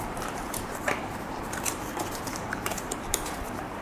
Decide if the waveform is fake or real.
fake